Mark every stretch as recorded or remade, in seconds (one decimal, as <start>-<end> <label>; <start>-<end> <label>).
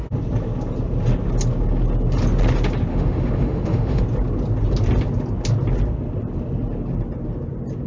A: 0.0-2.9 recorded; 2.9-4.0 remade; 4.0-7.9 recorded